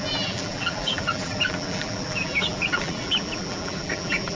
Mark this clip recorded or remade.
remade